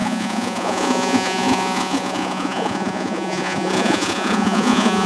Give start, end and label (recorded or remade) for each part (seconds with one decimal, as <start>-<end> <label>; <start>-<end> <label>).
0.0-5.1 remade